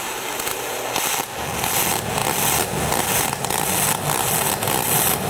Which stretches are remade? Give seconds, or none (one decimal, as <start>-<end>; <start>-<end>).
none